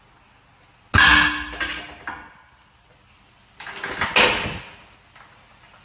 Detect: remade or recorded recorded